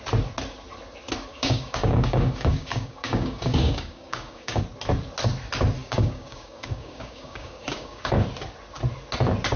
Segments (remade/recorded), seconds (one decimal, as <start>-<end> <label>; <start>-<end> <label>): 0.0-1.3 recorded; 1.3-4.6 remade; 4.6-5.8 recorded; 5.8-8.1 remade; 8.1-9.6 recorded

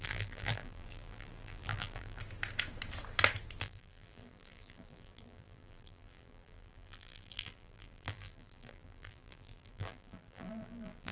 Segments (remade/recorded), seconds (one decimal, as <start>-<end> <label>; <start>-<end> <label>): 0.0-2.2 remade; 2.2-3.6 recorded; 3.6-11.1 remade

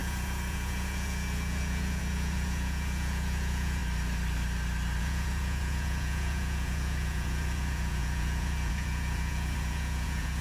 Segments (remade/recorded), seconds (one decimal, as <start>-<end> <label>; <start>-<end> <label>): 0.0-3.8 remade; 3.8-5.0 recorded; 5.0-10.4 remade

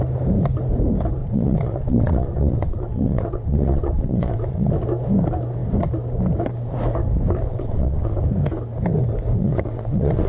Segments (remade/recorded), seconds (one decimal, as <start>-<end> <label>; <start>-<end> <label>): 0.0-1.2 recorded; 1.2-4.7 remade; 4.7-7.5 recorded; 7.5-8.2 remade; 8.2-9.4 recorded; 9.4-10.3 remade

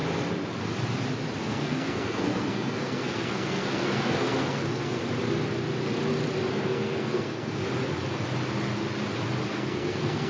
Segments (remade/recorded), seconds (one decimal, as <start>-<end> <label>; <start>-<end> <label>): 0.0-1.4 recorded; 1.4-5.0 remade; 5.0-6.5 recorded; 6.5-7.6 remade; 7.6-9.5 recorded; 9.5-10.3 remade